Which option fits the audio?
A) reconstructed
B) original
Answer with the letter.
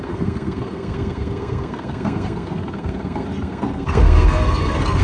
A